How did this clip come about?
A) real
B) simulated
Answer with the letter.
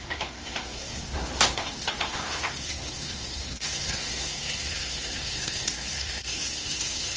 B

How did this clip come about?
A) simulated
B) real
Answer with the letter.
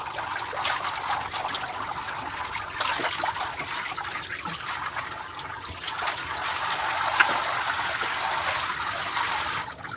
B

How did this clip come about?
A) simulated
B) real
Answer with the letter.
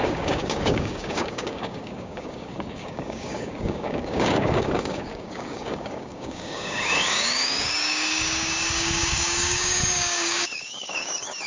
A